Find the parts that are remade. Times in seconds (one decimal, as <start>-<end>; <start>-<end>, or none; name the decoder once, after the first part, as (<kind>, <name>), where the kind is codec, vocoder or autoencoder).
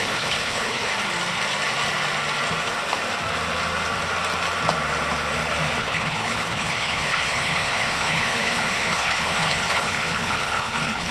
0.0-0.9 (codec, HILCodec); 5.8-11.1